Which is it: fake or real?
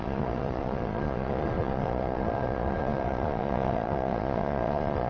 fake